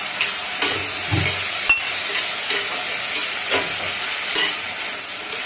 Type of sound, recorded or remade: recorded